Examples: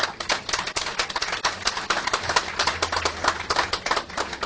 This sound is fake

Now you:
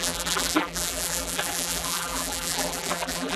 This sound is fake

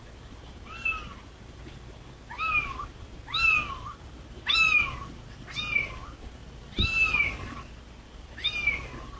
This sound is real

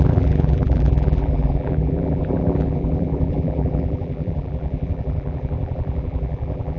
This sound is fake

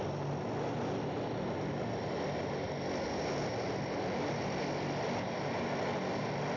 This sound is real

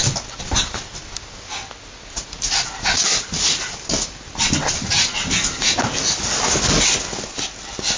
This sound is real